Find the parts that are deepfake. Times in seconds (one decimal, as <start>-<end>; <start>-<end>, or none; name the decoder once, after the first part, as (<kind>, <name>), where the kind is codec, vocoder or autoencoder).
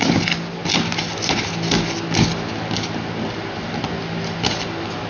none